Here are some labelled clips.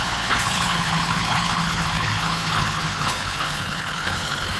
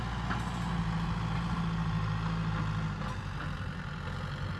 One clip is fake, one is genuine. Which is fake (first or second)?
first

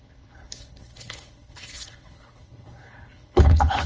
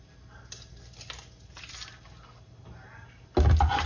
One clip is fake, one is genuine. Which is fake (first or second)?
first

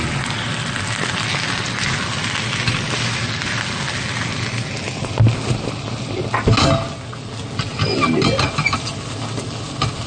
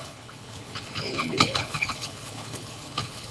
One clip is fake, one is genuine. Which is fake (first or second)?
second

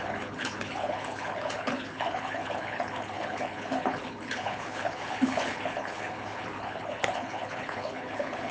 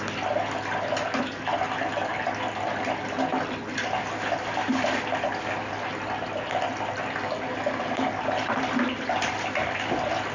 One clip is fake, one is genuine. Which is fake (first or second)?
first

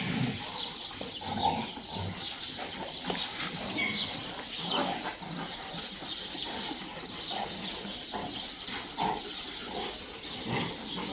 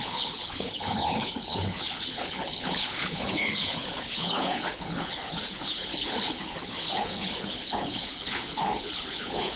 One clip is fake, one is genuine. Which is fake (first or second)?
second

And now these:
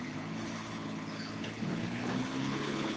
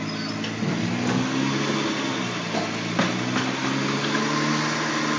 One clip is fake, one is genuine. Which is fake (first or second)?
first